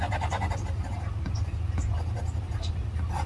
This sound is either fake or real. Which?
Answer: real